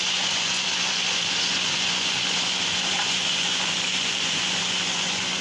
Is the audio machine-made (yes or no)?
yes